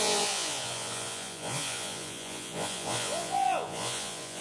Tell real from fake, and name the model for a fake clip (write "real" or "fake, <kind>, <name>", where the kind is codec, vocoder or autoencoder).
fake, vocoder, Vocos